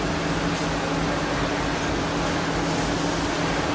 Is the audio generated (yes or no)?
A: no